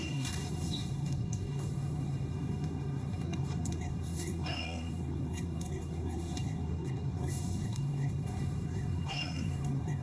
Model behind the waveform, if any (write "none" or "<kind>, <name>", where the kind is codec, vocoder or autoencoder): codec, SNAC